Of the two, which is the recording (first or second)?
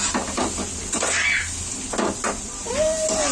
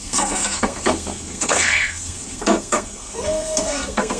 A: first